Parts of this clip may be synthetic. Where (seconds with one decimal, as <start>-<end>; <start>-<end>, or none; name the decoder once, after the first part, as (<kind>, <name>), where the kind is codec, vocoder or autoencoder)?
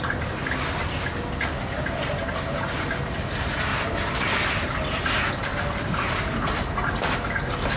5.5-7.1 (vocoder, BigVGAN v2)